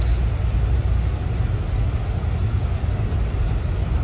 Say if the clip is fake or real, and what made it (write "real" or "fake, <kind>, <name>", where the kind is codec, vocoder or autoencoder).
real